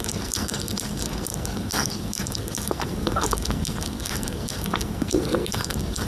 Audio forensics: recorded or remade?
remade